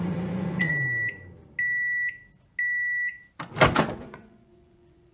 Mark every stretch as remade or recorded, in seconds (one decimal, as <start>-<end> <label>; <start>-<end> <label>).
0.0-0.7 remade; 0.7-3.8 recorded; 3.8-5.1 remade